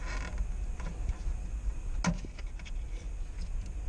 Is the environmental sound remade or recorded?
recorded